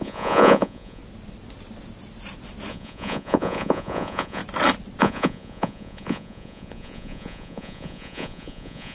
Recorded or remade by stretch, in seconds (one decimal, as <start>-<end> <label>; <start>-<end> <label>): 0.0-1.0 remade; 1.0-2.7 recorded; 2.7-4.4 remade; 4.4-5.0 recorded; 5.0-8.9 remade